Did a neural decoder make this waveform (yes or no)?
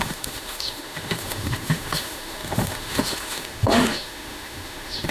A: yes